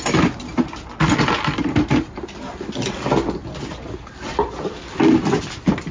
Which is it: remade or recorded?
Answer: recorded